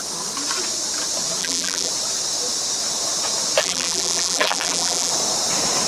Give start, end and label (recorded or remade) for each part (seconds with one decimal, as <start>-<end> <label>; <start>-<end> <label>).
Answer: 0.0-1.4 recorded; 1.4-1.9 remade; 1.9-3.6 recorded; 3.6-5.1 remade; 5.1-5.9 recorded